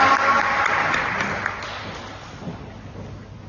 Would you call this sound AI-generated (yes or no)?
no